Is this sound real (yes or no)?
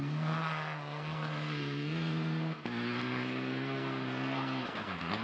no